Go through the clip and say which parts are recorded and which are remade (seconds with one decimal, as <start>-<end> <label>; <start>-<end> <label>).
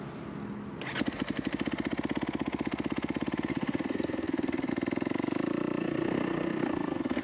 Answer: 0.0-3.5 recorded; 3.5-4.7 remade; 4.7-5.8 recorded; 5.8-7.2 remade